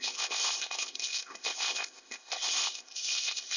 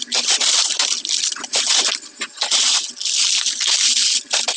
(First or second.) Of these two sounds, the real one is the second